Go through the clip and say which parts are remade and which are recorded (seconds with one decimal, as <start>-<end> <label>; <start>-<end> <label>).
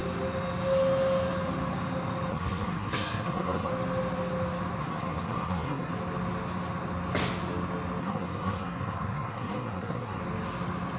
0.0-2.3 recorded; 2.3-3.7 remade; 3.7-4.8 recorded; 4.8-5.9 remade; 5.9-8.0 recorded; 8.0-10.2 remade; 10.2-11.0 recorded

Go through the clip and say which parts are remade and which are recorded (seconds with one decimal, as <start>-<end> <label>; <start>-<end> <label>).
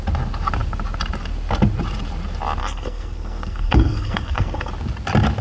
0.0-2.6 recorded; 2.6-4.7 remade; 4.7-5.4 recorded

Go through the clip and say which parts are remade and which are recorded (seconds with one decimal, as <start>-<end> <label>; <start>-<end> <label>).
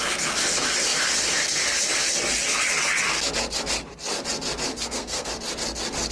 0.0-4.7 recorded; 4.7-5.3 remade; 5.3-6.1 recorded